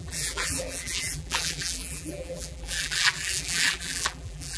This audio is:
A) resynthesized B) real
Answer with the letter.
A